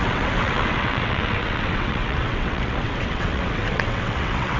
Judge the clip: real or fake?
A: fake